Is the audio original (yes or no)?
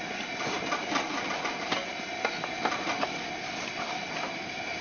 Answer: yes